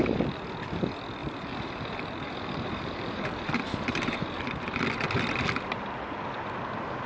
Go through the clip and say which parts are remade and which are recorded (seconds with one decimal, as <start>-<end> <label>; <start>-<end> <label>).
0.0-1.2 recorded; 1.2-4.8 remade; 4.8-7.1 recorded